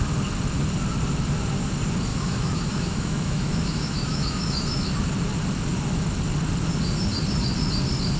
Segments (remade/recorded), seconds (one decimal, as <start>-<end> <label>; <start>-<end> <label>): 0.0-2.1 recorded; 2.1-4.9 remade; 4.9-8.2 recorded